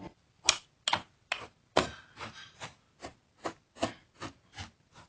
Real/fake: real